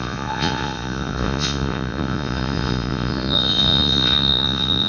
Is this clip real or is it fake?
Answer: fake